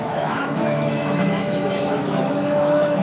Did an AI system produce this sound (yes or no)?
yes